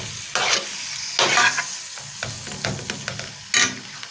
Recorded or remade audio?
recorded